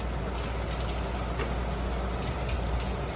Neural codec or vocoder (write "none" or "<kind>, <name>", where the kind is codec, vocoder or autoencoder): none